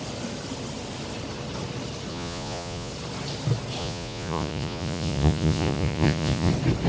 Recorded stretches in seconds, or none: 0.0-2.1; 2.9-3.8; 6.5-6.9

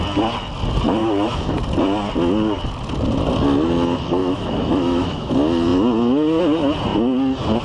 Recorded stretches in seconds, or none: 0.0-1.0; 1.6-4.2; 5.3-7.6

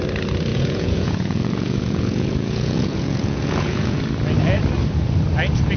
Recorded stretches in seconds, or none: 0.0-0.5; 4.0-5.8

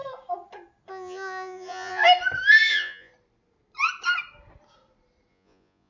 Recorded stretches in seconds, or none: 0.0-0.9; 2.0-2.7; 3.1-5.3

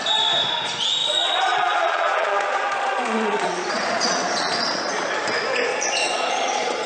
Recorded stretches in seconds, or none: 0.0-1.0; 5.1-5.7

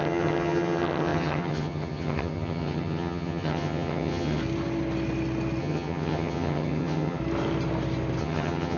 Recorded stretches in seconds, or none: 4.4-5.6; 7.2-8.2

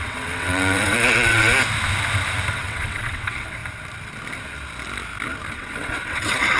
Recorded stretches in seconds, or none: 1.5-2.5; 3.6-5.5